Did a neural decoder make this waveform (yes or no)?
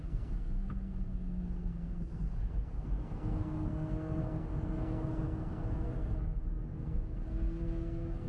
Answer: yes